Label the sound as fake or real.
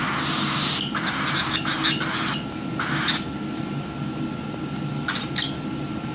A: real